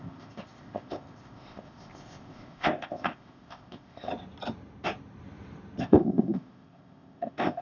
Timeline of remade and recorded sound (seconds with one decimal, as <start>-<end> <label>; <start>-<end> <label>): 0.0-4.1 remade; 4.1-5.8 recorded; 5.8-7.6 remade